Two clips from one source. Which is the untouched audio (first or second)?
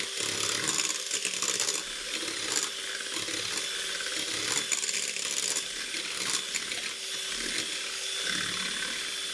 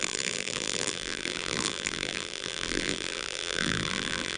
first